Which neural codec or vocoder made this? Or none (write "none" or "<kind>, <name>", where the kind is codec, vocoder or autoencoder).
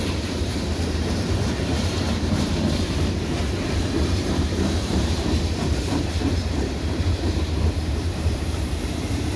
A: vocoder, BigVGAN v2